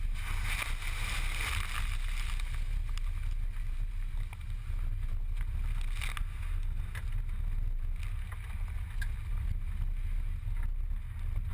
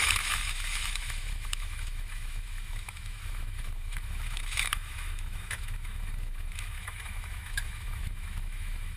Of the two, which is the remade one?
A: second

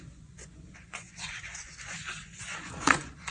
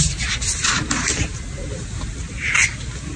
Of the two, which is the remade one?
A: first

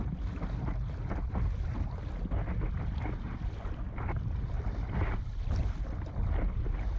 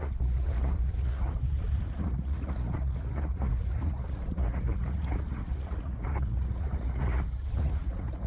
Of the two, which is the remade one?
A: second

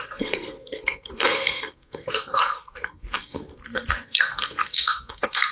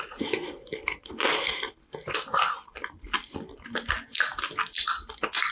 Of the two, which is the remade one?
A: first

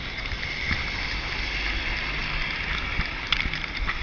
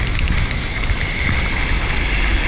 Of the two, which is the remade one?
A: second